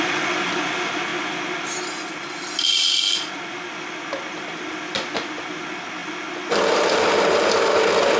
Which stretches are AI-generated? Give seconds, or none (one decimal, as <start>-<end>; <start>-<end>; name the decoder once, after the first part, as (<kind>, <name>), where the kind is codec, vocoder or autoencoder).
none